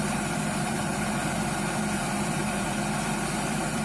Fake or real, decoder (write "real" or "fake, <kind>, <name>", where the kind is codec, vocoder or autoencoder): fake, vocoder, BigVGAN v2